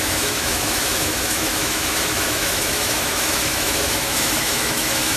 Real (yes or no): no